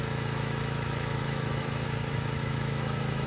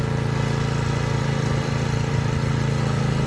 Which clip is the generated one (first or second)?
first